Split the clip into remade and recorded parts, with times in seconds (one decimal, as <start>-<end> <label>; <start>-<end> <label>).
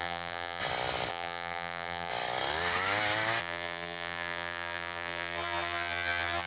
0.0-0.6 remade; 0.6-1.1 recorded; 1.1-2.1 remade; 2.1-3.4 recorded; 3.4-6.5 remade